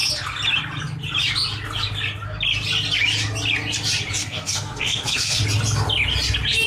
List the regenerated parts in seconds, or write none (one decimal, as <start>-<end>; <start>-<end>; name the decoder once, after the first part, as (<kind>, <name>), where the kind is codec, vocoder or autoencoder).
4.2-5.4 (codec, SNAC)